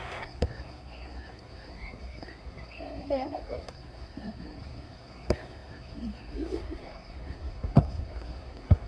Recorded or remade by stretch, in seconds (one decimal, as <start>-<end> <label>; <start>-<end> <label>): 0.0-8.9 remade